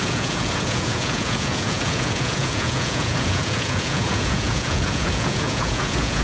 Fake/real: fake